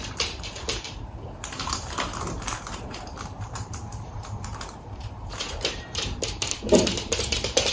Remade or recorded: remade